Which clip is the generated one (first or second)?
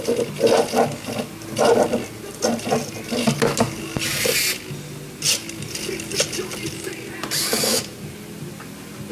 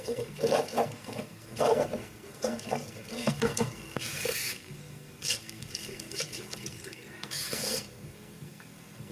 second